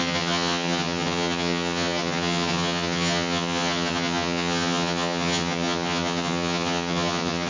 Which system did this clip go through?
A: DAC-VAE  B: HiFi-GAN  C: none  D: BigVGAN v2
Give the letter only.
B